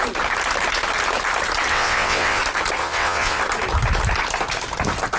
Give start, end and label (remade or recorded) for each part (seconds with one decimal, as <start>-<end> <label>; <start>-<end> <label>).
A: 0.0-1.7 recorded; 1.7-2.4 remade; 2.4-2.8 recorded; 2.8-3.4 remade; 3.4-5.2 recorded